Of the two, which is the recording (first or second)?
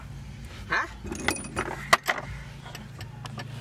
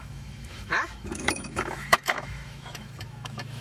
first